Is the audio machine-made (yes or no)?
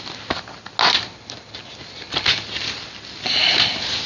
no